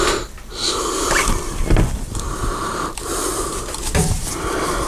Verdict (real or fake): fake